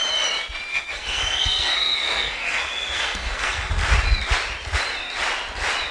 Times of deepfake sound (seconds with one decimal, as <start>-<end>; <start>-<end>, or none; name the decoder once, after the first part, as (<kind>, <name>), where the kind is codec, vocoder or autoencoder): 0.7-3.7 (codec, SNAC)